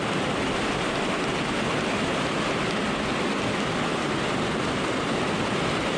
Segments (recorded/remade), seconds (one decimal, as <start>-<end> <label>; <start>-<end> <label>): 0.0-6.0 recorded